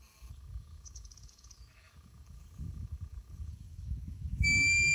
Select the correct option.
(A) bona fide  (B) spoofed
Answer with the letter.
B